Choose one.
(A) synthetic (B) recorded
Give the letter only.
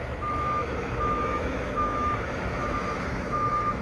A